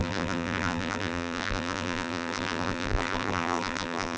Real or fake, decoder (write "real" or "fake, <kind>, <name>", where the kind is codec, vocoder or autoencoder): fake, vocoder, BigVGAN v2